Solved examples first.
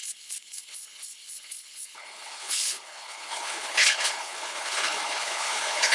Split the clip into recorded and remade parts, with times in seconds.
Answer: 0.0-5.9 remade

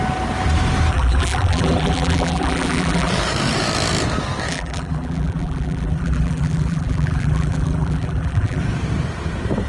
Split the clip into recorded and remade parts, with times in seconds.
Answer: 0.0-0.9 recorded; 0.9-3.1 remade; 3.1-4.5 recorded; 4.5-8.6 remade; 8.6-9.7 recorded